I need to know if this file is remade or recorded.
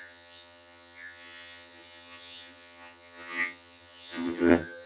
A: remade